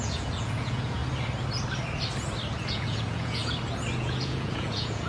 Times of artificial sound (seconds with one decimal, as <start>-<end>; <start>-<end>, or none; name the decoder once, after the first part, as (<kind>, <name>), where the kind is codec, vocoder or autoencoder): 0.0-1.0 (vocoder, Vocos); 2.5-3.4; 4.0-5.1